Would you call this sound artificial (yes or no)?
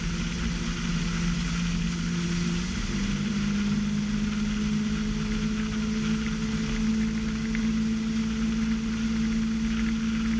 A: no